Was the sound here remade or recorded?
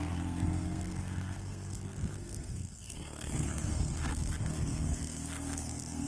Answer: remade